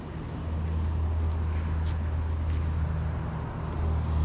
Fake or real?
real